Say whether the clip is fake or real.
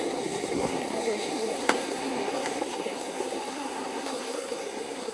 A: fake